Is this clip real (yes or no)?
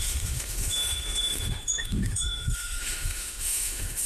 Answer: no